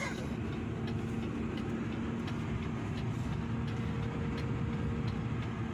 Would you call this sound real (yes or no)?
yes